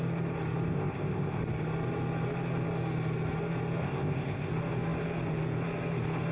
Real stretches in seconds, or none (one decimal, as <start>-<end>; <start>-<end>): 0.0-0.7; 1.4-3.8; 4.5-6.3